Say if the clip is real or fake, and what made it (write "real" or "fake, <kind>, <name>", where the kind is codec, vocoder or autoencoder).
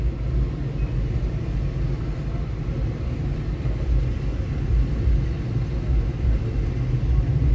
real